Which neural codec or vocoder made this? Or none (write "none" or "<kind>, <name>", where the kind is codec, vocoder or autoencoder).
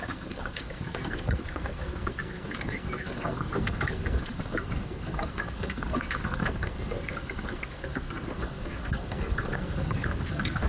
codec, SNAC